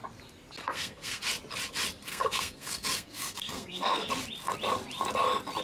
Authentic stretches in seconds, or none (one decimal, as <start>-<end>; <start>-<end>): 0.0-0.6; 1.2-2.1; 4.1-5.6